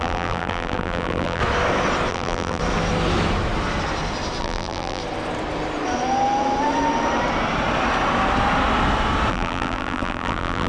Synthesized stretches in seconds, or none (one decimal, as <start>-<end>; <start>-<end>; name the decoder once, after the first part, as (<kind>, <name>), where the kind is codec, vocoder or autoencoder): 0.0-1.4 (vocoder, BigVGAN v2); 2.1-2.6; 4.4-5.0; 9.3-10.7